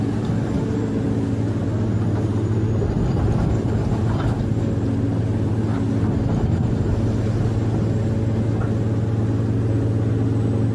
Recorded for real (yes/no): yes